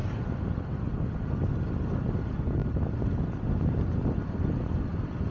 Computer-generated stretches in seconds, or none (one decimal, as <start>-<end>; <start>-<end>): none